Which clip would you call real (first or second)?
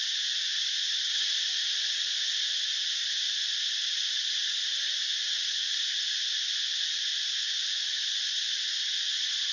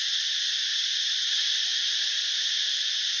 second